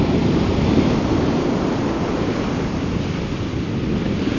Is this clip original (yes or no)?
yes